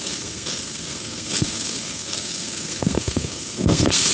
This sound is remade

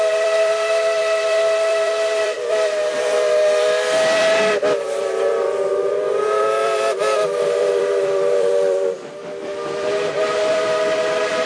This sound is remade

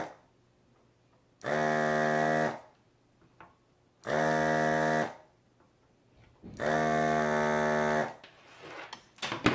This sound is recorded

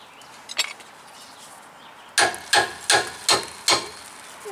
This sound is recorded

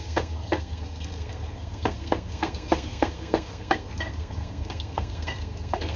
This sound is remade